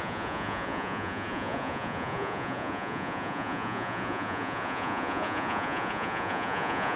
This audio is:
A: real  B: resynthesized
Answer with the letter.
B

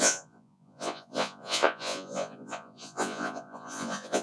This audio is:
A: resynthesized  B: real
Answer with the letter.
A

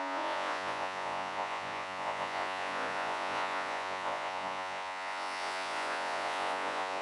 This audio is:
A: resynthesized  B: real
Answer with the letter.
A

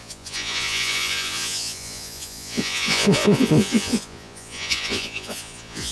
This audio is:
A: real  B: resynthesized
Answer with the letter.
B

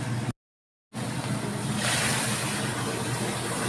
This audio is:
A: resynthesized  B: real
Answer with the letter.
B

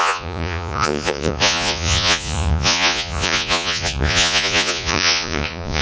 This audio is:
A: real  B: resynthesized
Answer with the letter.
B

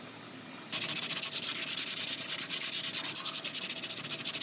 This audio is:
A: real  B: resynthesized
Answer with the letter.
A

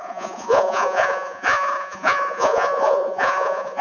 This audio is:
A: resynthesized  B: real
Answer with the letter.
A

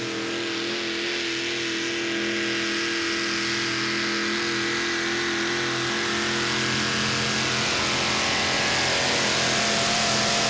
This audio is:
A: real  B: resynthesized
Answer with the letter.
A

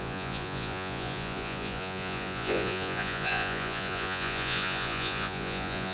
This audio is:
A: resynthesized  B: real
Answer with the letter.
A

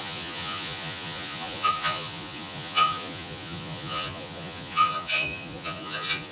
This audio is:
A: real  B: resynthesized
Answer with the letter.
B